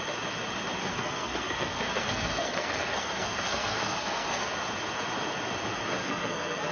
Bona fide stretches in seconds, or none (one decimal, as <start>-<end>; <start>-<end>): 0.0-0.9; 4.5-6.0